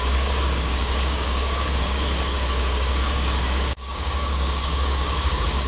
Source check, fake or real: fake